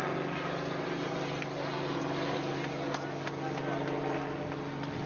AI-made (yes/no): no